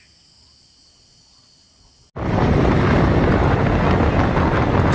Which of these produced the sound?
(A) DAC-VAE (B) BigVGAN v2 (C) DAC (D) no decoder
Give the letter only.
D